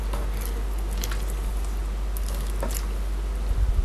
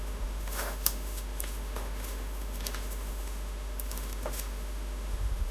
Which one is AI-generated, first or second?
second